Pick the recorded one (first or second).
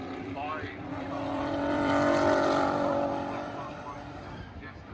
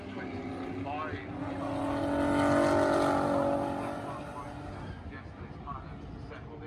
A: second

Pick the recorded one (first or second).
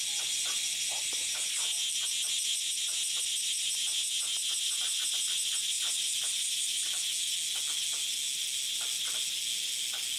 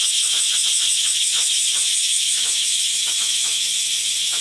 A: first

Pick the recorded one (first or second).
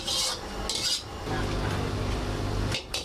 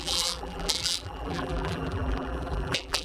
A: first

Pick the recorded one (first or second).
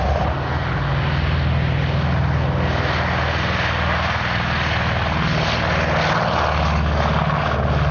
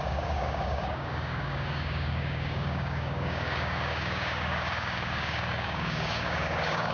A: first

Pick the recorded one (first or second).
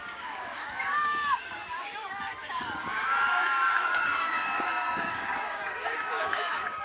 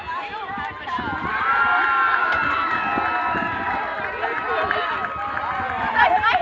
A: second